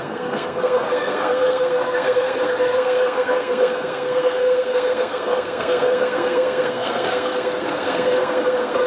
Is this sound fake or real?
fake